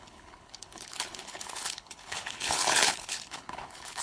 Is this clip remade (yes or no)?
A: yes